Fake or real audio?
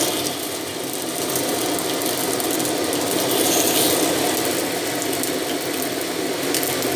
real